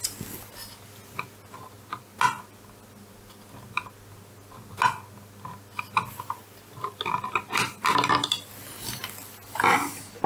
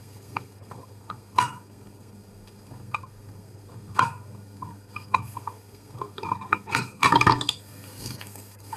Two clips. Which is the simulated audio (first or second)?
second